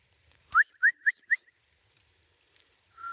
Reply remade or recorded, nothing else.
remade